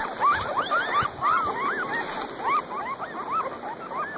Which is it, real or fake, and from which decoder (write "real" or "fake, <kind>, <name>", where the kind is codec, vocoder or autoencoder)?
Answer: real